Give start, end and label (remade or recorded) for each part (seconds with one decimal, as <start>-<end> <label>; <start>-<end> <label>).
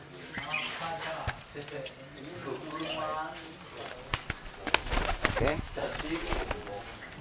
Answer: 0.0-5.5 recorded; 5.5-6.3 remade; 6.3-7.2 recorded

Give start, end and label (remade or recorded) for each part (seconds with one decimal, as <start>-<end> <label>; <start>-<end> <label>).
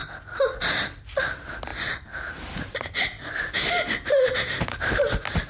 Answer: 0.0-1.7 recorded; 1.7-5.0 remade; 5.0-5.5 recorded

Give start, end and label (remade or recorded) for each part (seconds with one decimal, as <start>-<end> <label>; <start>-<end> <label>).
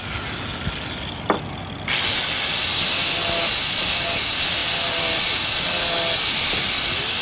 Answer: 0.0-4.6 recorded; 4.6-5.2 remade; 5.2-7.2 recorded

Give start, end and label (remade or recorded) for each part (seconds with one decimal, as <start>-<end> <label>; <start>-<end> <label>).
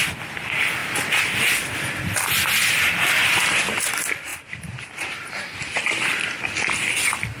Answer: 0.0-4.3 recorded; 4.3-5.8 remade; 5.8-7.4 recorded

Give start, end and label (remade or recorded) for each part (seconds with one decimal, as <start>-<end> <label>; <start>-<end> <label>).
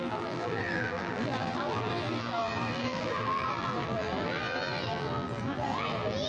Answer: 0.0-6.3 remade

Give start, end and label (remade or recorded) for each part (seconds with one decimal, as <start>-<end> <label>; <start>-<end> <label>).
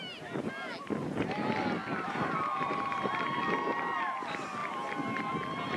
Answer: 0.0-1.8 recorded; 1.8-3.2 remade; 3.2-5.8 recorded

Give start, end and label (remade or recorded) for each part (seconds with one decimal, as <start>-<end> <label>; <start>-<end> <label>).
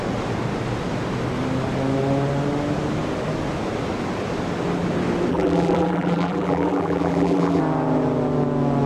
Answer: 0.0-5.3 recorded; 5.3-7.6 remade; 7.6-8.9 recorded